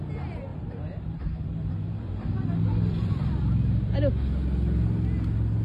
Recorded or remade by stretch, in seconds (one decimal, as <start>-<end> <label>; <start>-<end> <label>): 0.0-0.5 recorded; 0.5-3.9 remade; 3.9-5.6 recorded